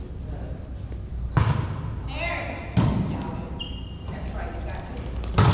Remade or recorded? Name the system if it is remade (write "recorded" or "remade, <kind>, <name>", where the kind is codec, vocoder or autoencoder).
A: recorded